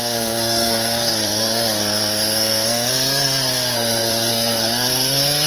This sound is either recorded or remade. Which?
remade